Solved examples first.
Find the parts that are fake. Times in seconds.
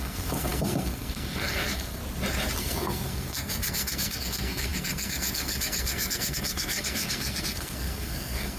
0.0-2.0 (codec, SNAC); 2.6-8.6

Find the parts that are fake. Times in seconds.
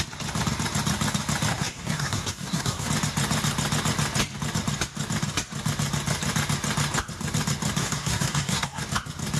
1.5-2.9 (codec, SNAC); 7.8-8.8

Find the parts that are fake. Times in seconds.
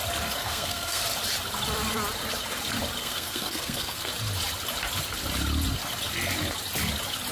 0.4-1.0 (codec, SNAC); 3.0-4.1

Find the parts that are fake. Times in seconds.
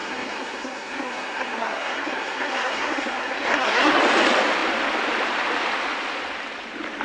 0.0-4.0 (codec, SNAC)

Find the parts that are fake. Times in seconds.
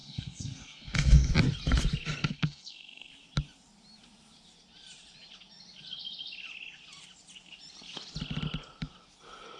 0.0-1.3 (codec, SNAC); 2.2-3.1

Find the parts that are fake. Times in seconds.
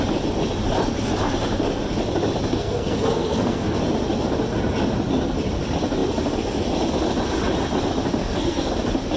2.5-3.8 (codec, SNAC); 8.2-8.7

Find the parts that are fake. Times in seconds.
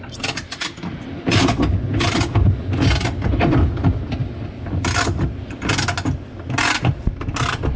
none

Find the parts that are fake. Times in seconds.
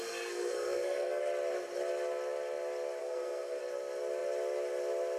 0.0-1.2 (codec, SNAC); 3.0-3.6